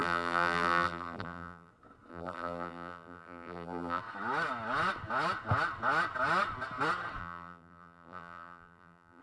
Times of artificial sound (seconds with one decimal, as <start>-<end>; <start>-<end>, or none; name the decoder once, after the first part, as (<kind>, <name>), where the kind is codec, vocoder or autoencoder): 0.0-1.7 (vocoder, BigVGAN v2); 2.1-4.0; 7.2-9.2